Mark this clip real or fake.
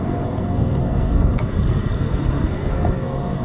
fake